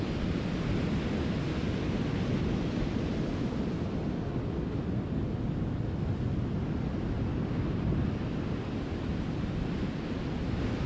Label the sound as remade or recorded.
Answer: recorded